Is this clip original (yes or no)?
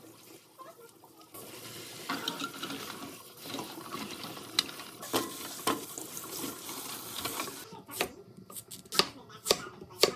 yes